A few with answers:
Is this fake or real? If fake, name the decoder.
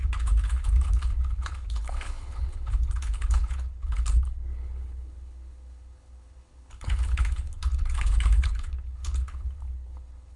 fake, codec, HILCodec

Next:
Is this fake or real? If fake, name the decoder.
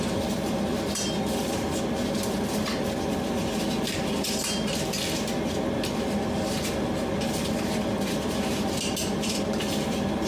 fake, vocoder, BigVGAN v2